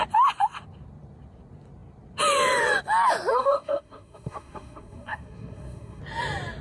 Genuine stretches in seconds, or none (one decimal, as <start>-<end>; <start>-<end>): 0.0-3.3; 6.0-6.6